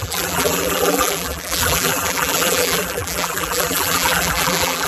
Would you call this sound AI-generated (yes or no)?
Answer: yes